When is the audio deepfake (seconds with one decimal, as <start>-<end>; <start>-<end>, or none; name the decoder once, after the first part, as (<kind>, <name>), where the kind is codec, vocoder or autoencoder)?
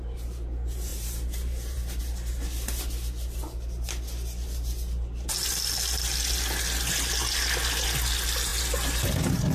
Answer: 0.9-2.0 (vocoder, BigVGAN v2)